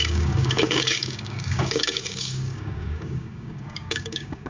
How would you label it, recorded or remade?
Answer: remade